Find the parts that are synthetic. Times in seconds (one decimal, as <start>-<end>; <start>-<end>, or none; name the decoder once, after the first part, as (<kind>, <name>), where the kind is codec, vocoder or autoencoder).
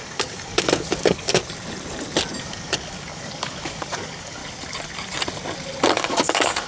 0.0-1.4 (codec, DAC); 2.4-4.4; 5.9-6.7